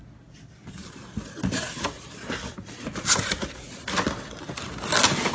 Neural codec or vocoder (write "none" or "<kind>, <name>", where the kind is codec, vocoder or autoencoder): none